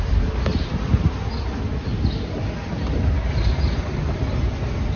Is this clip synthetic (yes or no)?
no